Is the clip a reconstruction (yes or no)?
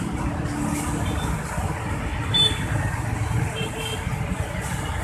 no